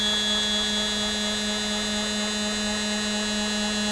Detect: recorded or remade recorded